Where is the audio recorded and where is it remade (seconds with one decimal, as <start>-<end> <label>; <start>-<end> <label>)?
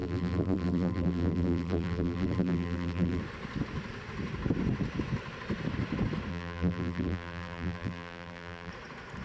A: 0.0-3.2 remade; 3.2-6.3 recorded; 6.3-8.7 remade; 8.7-9.2 recorded